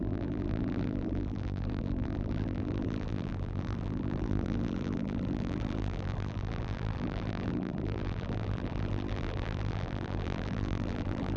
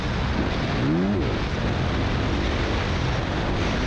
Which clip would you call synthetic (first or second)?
first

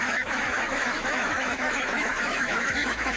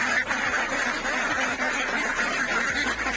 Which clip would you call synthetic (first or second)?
first